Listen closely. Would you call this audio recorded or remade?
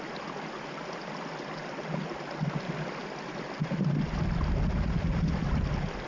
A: recorded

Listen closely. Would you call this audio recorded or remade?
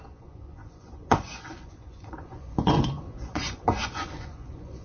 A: remade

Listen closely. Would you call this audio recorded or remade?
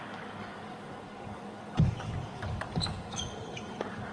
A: remade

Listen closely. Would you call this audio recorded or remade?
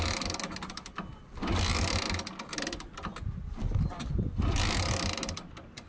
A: recorded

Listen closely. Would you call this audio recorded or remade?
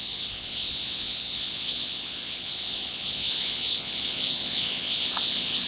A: remade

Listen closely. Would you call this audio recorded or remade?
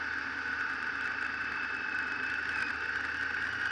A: recorded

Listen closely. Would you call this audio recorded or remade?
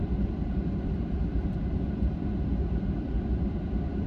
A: remade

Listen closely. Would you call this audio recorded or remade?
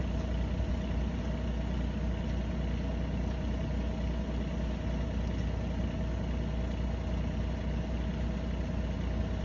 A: recorded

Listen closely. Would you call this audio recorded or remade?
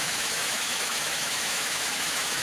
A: remade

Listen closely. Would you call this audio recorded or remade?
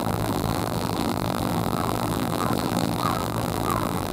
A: remade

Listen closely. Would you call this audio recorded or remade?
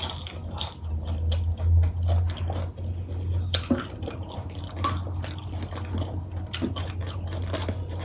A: recorded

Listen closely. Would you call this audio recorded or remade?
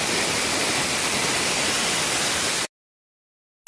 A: recorded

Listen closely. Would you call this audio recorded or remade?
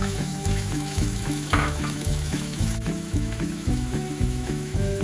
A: remade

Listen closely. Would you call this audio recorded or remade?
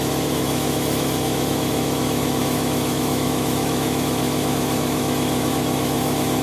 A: remade